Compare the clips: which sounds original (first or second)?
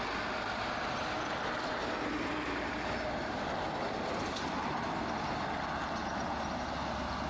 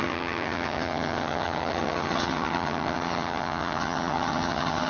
first